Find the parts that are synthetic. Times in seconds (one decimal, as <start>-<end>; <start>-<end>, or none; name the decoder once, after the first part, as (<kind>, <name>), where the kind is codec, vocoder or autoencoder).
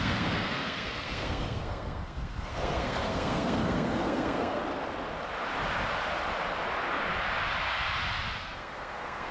0.0-4.6 (codec, SNAC); 8.4-9.3